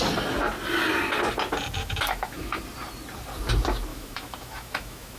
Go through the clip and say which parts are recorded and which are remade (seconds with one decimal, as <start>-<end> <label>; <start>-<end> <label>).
0.0-1.8 recorded; 1.8-2.6 remade; 2.6-3.9 recorded; 3.9-5.2 remade